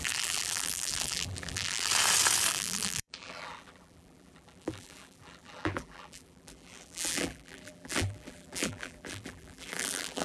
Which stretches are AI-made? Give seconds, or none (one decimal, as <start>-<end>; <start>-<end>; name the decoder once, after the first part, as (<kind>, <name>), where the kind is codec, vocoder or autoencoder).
0.0-1.9 (vocoder, BigVGAN v2); 2.5-10.2